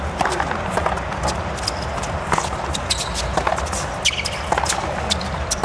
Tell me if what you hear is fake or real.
real